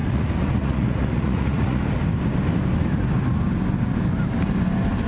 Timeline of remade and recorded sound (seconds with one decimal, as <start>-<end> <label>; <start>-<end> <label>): 0.0-1.8 remade; 1.8-5.1 recorded